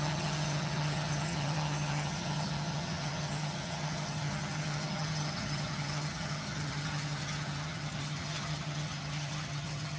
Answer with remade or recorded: remade